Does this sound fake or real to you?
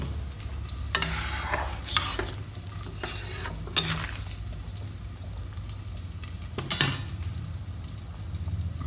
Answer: real